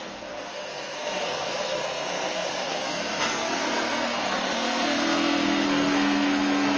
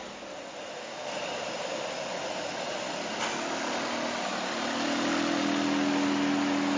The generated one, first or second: first